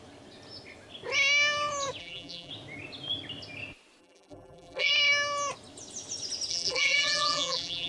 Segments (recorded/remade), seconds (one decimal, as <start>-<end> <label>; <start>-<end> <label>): 0.0-2.0 recorded; 2.0-2.5 remade; 2.5-4.0 recorded; 4.0-4.9 remade; 4.9-6.5 recorded; 6.5-7.9 remade